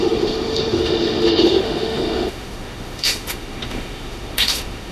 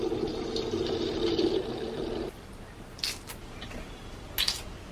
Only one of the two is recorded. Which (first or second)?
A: second